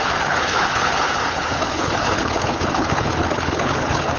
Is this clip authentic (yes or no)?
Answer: no